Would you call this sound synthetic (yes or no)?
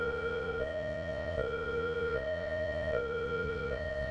yes